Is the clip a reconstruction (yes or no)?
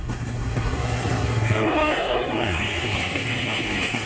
yes